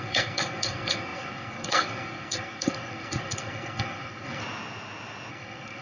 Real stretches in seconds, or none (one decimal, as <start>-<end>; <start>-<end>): 4.4-5.3

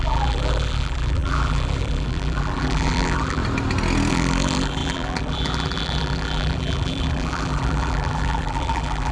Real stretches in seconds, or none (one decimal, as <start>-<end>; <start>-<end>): 3.4-4.1

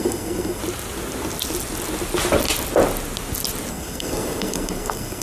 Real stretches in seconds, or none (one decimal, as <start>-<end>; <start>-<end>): 0.6-3.7

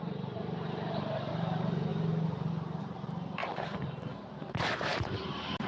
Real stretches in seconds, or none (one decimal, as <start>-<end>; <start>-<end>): 1.9-2.8; 3.4-4.5

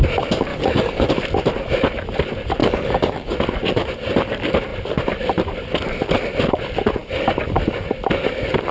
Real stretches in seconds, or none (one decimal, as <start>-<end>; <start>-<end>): 0.0-0.5; 1.1-2.6; 3.3-8.7

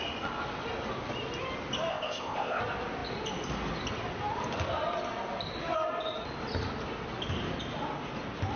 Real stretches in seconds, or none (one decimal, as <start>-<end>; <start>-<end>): 0.0-1.9; 2.6-8.6

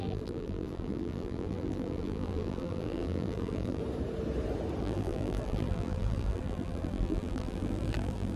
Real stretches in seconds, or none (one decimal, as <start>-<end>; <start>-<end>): 3.8-4.8